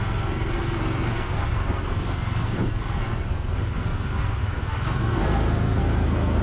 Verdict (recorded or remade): remade